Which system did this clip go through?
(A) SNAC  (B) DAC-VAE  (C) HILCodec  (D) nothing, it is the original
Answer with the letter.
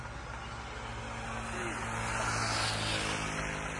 D